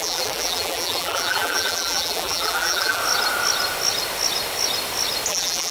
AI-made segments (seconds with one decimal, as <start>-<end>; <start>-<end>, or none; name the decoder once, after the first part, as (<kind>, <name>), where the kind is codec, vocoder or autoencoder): 0.0-3.0 (vocoder, BigVGAN v2); 5.3-5.7